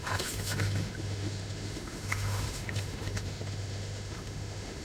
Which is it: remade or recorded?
remade